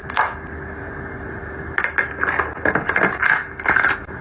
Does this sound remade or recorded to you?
recorded